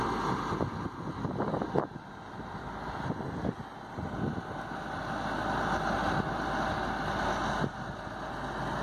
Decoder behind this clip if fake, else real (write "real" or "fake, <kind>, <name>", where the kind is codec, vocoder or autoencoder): real